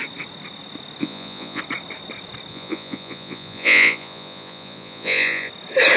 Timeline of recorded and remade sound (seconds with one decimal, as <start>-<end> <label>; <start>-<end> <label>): 0.0-1.0 recorded; 1.0-1.6 remade; 1.6-2.5 recorded; 2.5-5.5 remade; 5.5-6.0 recorded